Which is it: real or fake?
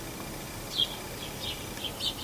real